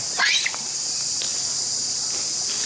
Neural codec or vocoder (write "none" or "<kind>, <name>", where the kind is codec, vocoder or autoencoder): none